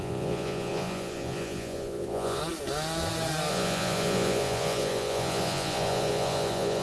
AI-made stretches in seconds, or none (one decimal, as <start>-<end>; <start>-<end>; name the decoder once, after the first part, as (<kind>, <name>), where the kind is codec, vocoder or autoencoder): 0.0-2.4 (vocoder, Vocos); 3.5-6.8